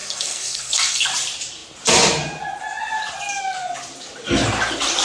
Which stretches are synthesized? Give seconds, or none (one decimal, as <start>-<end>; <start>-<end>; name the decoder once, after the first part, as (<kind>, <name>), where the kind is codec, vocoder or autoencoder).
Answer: 0.0-1.1 (codec, SNAC)